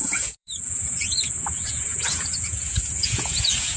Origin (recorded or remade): remade